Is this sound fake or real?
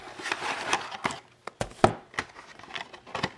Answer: real